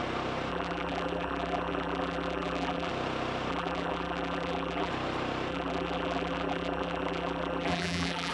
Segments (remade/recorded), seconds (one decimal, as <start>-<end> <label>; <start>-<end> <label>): 0.0-0.5 recorded; 0.5-2.9 remade; 2.9-3.5 recorded; 3.5-4.9 remade; 4.9-5.5 recorded; 5.5-8.3 remade